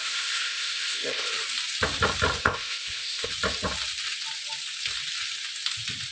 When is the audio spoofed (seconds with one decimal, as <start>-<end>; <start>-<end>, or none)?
0.0-1.3; 2.4-3.3